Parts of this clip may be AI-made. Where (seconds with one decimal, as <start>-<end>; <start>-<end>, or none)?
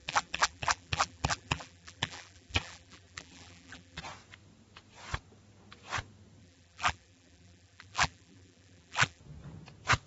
0.0-4.0; 6.4-9.2